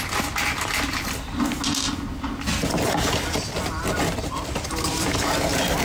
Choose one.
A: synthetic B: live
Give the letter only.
B